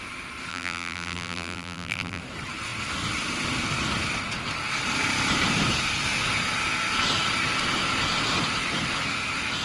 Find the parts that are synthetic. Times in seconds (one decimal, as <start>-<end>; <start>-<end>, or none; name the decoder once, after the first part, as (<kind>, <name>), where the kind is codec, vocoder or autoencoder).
0.5-2.2 (vocoder, BigVGAN v2)